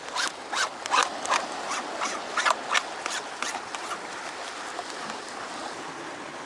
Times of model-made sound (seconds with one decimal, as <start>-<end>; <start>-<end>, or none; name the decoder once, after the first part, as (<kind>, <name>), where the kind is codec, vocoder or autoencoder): none